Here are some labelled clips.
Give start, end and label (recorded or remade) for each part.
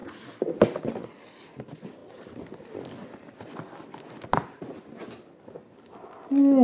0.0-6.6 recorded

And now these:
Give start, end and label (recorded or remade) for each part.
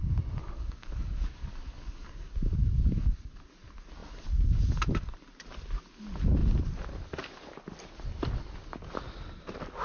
0.0-0.4 recorded; 0.4-3.4 remade; 3.4-9.8 recorded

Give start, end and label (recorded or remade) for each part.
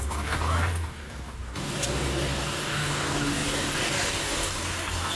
0.0-5.2 remade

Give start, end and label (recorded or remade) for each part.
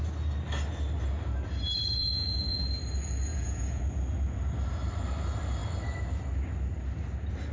0.0-2.0 recorded; 2.0-2.6 remade; 2.6-3.3 recorded; 3.3-3.8 remade; 3.8-7.5 recorded